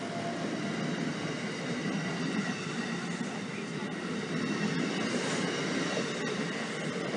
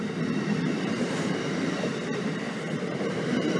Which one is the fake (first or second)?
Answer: second